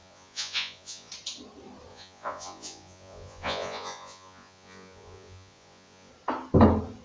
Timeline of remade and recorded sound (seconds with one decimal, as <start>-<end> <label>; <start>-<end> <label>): 0.0-1.1 remade; 1.1-1.9 recorded; 1.9-6.1 remade; 6.1-7.0 recorded